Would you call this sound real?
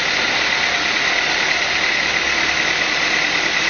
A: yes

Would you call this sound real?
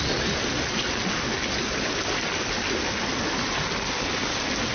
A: yes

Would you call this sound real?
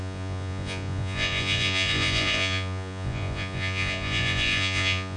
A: no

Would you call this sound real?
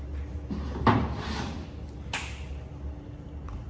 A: yes